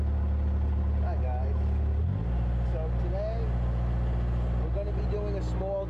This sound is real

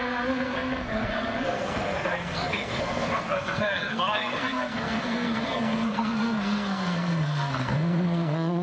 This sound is fake